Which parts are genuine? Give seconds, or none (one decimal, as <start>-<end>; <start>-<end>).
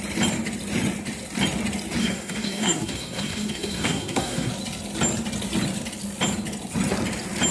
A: 0.0-2.0; 4.5-7.5